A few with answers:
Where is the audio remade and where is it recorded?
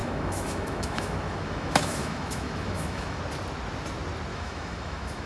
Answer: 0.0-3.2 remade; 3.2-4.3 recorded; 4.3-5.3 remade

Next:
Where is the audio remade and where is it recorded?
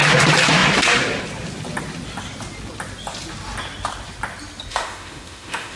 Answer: 0.0-4.7 recorded; 4.7-5.8 remade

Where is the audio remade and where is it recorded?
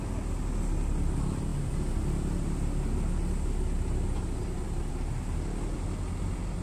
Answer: 0.0-6.6 recorded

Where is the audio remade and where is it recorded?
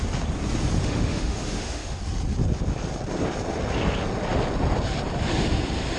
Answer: 0.0-0.8 recorded; 0.8-2.0 remade; 2.0-6.0 recorded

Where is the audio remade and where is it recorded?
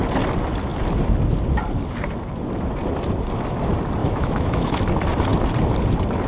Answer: 0.0-4.0 recorded; 4.0-4.8 remade; 4.8-6.3 recorded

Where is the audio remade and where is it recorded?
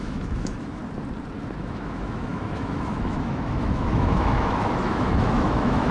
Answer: 0.0-0.8 remade; 0.8-1.6 recorded; 1.6-5.9 remade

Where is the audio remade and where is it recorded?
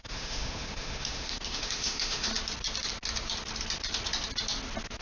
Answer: 0.0-2.3 remade; 2.3-5.0 recorded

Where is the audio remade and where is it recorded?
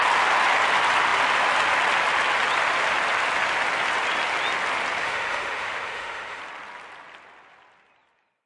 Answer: 0.0-5.0 recorded; 5.0-6.4 remade; 6.4-8.5 recorded